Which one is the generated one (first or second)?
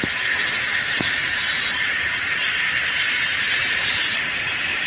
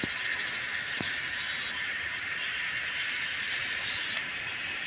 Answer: first